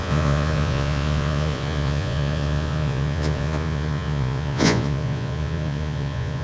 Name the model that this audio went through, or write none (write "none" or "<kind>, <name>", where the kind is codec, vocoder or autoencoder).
vocoder, Vocos